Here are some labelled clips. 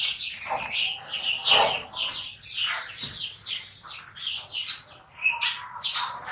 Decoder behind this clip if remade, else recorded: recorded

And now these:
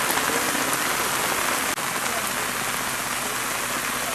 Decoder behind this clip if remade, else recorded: recorded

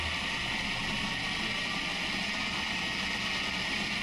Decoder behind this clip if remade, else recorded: recorded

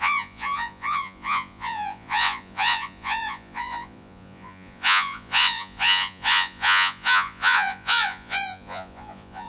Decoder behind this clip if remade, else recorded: remade, vocoder, Vocos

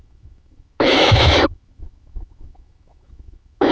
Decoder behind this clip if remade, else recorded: remade, autoencoder, DAC-VAE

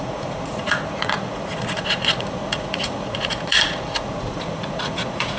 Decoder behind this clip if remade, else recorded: remade, vocoder, Vocos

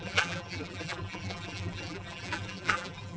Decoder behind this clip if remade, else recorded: remade, vocoder, BigVGAN v2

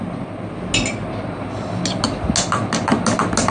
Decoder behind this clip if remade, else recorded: recorded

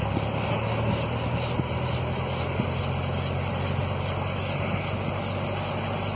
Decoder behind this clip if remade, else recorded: recorded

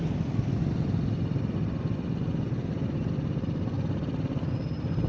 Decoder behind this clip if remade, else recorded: recorded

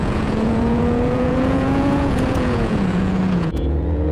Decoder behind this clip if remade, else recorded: remade, vocoder, Vocos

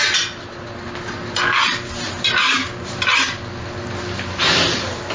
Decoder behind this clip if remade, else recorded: recorded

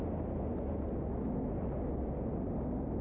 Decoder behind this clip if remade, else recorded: recorded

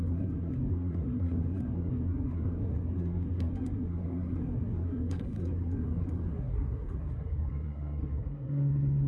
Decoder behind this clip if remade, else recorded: remade, codec, SNAC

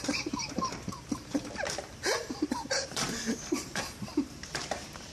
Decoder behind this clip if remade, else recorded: remade, vocoder, BigVGAN v2